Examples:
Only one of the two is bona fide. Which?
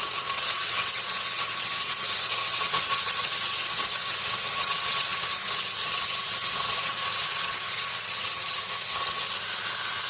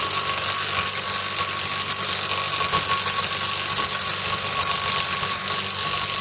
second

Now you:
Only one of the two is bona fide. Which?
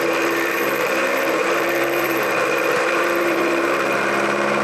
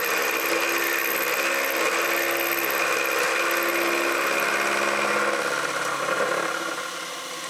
second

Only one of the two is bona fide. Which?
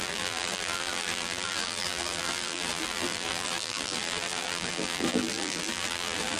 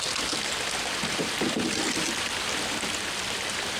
second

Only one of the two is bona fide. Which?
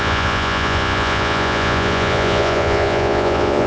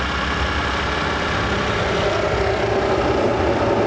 second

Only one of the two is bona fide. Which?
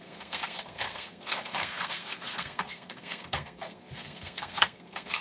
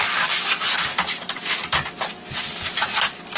second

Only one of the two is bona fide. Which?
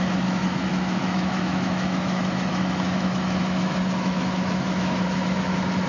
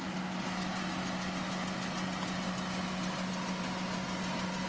second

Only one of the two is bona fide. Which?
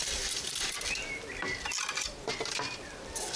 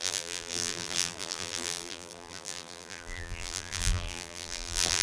first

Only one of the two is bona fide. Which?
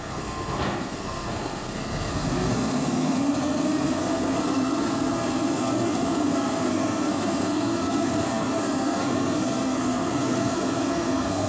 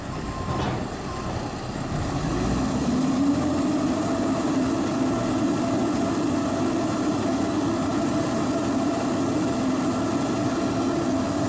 second